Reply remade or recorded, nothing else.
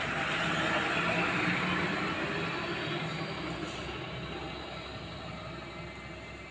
recorded